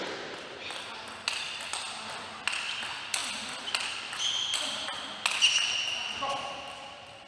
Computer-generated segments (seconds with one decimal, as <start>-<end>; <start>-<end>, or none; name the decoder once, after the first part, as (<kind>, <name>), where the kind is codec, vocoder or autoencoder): none